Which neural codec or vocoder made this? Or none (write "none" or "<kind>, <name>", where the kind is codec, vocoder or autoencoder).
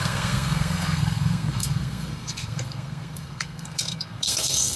codec, SNAC